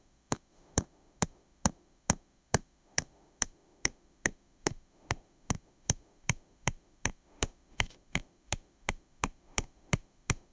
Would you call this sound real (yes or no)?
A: no